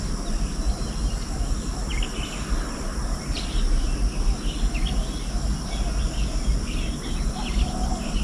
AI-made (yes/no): no